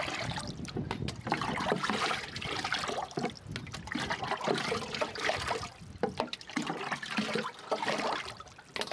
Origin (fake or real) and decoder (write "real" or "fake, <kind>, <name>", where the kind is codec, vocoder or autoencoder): real